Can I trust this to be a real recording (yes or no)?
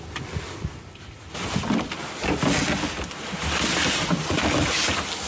no